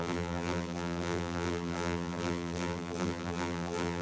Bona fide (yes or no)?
no